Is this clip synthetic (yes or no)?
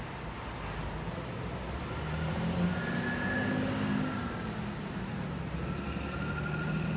no